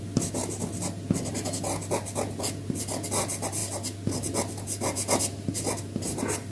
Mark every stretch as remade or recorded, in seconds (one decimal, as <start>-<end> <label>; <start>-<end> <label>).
0.0-6.5 recorded